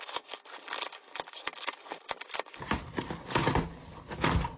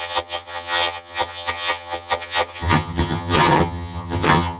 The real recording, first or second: first